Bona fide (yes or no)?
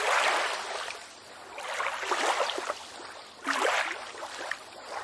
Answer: yes